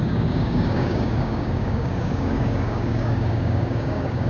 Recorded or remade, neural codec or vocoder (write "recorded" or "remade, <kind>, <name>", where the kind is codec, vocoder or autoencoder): remade, codec, DAC